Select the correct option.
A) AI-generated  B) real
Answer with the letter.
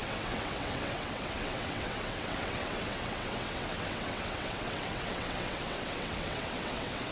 A